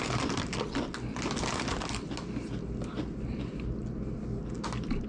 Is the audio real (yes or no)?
yes